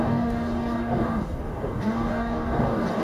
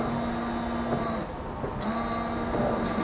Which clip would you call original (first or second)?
second